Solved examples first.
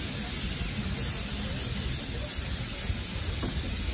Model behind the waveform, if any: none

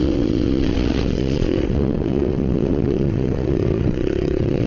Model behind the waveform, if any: vocoder, WaveNeXt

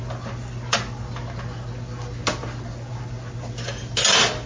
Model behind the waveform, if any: none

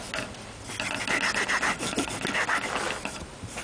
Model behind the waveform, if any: none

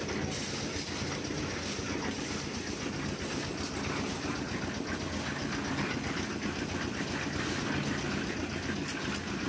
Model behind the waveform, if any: none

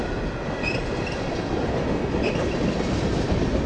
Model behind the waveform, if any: none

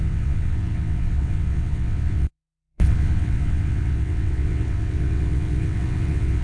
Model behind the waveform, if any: vocoder, WaveNeXt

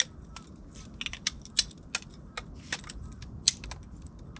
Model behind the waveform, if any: none